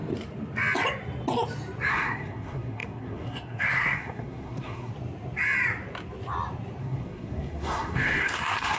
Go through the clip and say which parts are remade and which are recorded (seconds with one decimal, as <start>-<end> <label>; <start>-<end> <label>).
0.0-1.9 recorded; 1.9-4.9 remade; 4.9-6.8 recorded; 6.8-8.8 remade